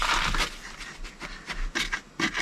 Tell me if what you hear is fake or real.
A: real